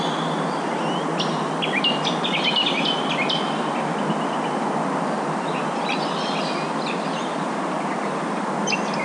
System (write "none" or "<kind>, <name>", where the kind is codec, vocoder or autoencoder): none